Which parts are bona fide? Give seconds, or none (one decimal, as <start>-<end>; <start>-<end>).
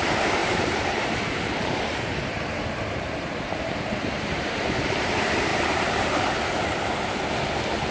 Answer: 0.0-0.4; 5.1-5.5; 6.1-7.9